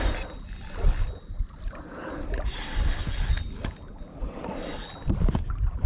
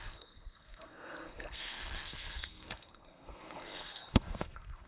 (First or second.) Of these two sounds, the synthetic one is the second